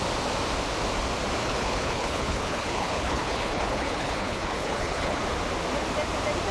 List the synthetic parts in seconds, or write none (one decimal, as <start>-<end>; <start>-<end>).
1.4-5.2